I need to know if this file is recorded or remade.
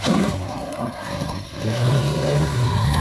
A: remade